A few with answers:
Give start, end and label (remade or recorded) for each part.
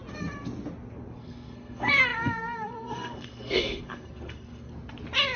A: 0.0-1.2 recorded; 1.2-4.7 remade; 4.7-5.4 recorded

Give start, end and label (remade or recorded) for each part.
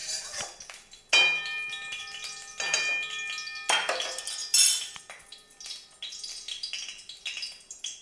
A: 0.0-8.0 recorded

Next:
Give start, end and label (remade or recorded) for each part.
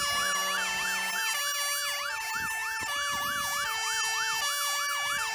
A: 0.0-5.3 recorded